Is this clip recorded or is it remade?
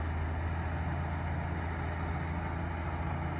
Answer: recorded